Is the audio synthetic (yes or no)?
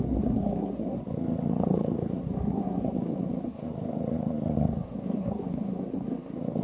yes